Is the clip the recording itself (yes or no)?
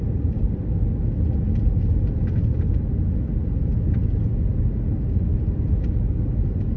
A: yes